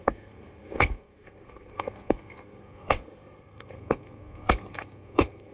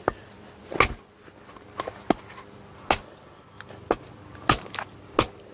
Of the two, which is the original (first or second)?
second